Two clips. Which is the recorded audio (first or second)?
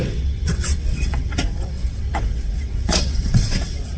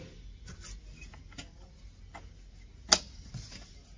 second